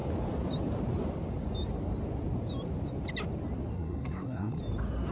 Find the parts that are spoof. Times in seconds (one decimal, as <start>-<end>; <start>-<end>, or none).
3.7-4.6